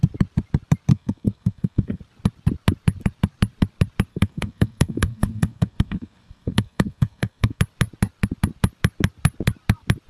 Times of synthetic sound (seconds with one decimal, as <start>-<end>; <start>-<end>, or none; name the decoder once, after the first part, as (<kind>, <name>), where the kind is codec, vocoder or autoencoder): 0.9-2.0 (codec, SNAC); 4.1-7.6